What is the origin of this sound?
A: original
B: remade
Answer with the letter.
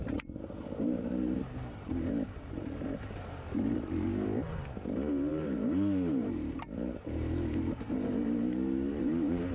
B